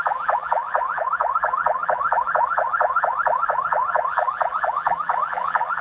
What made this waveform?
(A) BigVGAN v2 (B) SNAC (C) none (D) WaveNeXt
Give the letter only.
A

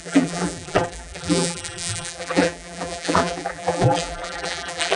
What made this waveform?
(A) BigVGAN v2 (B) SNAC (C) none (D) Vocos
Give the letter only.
A